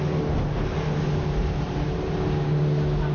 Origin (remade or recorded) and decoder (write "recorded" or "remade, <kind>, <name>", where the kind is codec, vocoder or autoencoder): recorded